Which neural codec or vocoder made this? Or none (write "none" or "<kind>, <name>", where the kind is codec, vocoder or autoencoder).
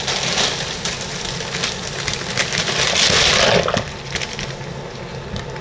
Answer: none